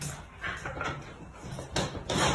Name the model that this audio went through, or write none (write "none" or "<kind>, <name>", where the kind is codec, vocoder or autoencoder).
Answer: none